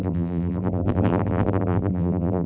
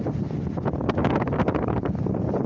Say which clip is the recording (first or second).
second